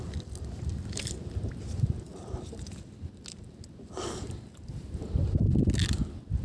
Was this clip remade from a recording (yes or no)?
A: no